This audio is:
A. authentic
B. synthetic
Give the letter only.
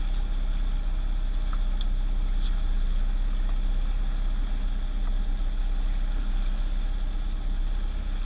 A